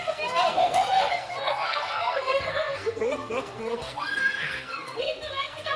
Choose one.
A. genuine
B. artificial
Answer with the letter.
B